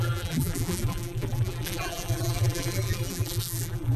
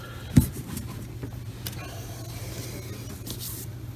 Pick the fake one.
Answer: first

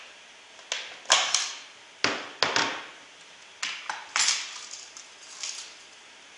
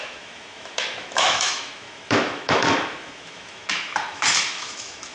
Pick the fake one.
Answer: second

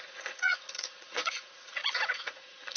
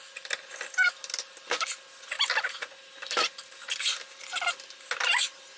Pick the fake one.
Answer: first